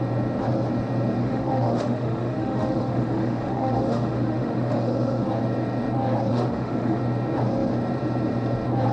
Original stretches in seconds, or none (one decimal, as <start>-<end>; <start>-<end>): 0.0-1.2; 5.2-6.3; 7.0-8.9